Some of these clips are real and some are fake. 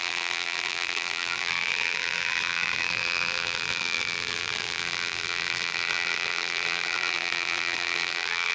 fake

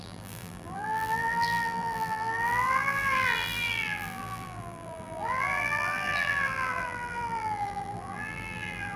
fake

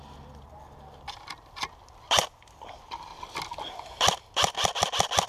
real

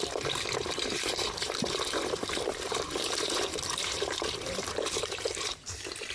fake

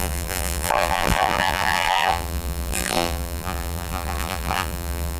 fake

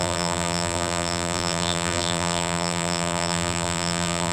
fake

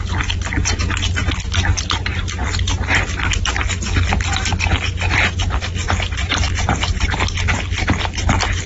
real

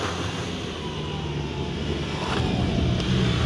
real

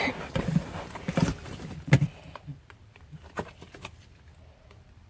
real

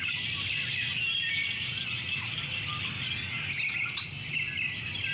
real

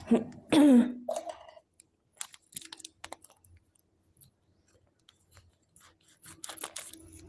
real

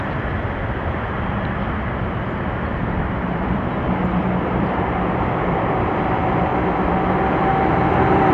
fake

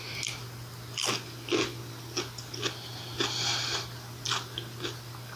real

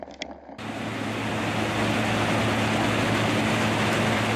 real